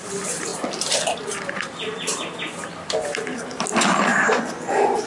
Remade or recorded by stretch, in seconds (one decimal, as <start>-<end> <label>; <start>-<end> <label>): 0.0-4.1 recorded; 4.1-5.1 remade